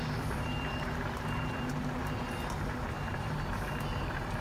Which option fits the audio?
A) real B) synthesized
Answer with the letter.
B